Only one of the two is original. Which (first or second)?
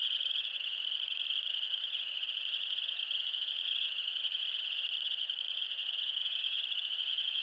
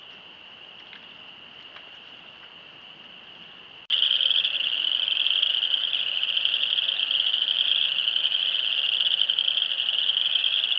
second